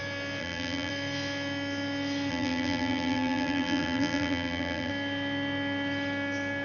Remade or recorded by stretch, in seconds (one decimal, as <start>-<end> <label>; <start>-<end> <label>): 0.0-0.4 recorded; 0.4-0.9 remade; 0.9-2.3 recorded; 2.3-4.9 remade; 4.9-6.6 recorded